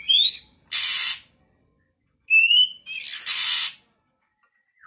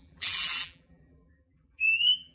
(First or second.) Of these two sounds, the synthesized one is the second